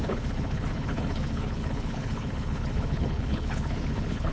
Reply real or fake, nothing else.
fake